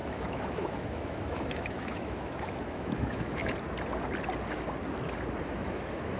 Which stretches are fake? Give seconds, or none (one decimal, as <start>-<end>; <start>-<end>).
0.0-3.4; 5.4-6.2